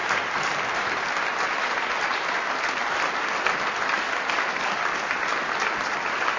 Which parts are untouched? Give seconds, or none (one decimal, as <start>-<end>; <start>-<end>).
0.0-6.4